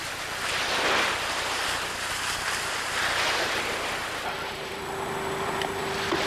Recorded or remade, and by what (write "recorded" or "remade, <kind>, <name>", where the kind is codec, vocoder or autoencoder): remade, vocoder, BigVGAN v2